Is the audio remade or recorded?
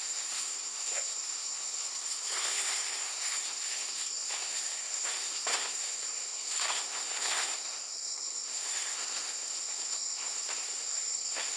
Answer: remade